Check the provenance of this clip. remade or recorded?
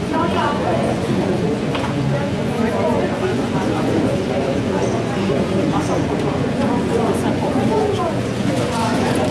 remade